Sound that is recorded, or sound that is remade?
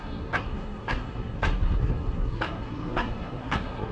remade